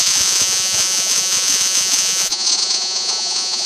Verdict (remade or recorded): remade